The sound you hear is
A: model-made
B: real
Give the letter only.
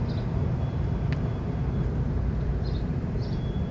A